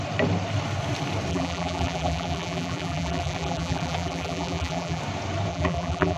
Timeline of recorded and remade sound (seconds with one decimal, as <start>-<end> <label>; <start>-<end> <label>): 0.0-1.3 recorded; 1.3-5.0 remade; 5.0-5.5 recorded; 5.5-6.2 remade

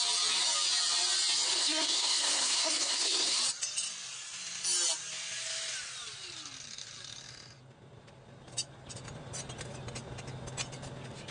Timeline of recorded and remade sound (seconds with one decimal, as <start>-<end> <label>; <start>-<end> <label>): 0.0-1.6 recorded; 1.6-3.4 remade; 3.4-11.3 recorded